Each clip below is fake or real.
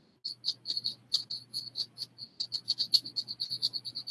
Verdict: real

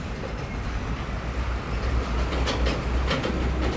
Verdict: real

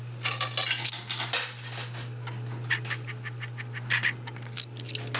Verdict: real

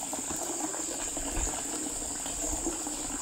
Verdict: real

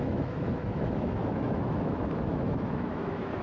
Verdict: fake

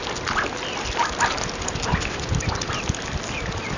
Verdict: real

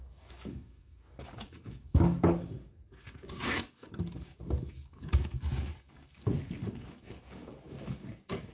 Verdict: fake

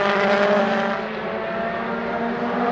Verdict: real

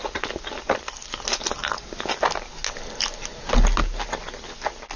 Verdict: real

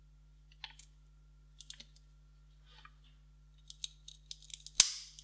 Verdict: real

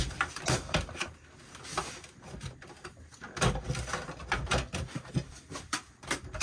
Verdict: fake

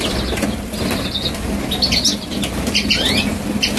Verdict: real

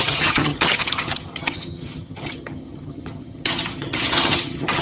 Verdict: fake